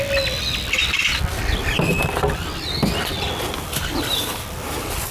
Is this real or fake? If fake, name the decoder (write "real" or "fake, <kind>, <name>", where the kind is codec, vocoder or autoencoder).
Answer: real